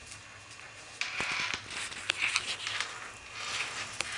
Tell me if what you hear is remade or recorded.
recorded